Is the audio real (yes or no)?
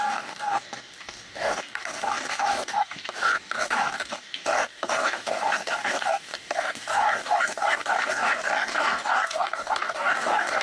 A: no